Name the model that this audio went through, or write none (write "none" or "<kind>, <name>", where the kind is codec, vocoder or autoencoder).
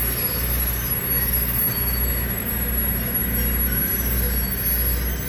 none